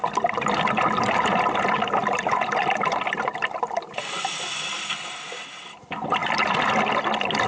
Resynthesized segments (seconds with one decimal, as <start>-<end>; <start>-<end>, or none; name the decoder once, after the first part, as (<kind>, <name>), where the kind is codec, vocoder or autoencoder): 0.0-3.2 (vocoder, BigVGAN v2); 6.2-6.8